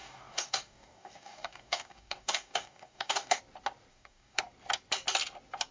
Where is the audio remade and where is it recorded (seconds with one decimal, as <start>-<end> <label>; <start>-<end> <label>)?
0.0-3.4 remade; 3.4-3.9 recorded; 3.9-4.4 remade; 4.4-5.7 recorded